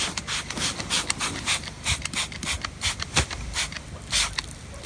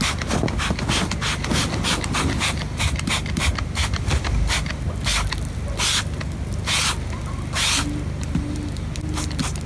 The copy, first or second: first